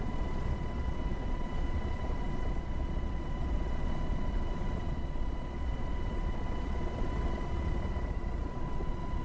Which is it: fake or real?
fake